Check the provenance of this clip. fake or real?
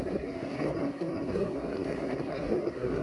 fake